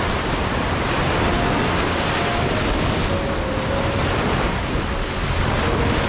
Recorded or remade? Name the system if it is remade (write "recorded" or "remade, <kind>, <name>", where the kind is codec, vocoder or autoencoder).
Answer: recorded